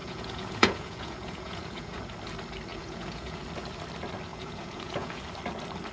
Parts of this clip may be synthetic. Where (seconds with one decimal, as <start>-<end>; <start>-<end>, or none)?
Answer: 0.0-2.0; 2.7-3.4; 4.3-5.2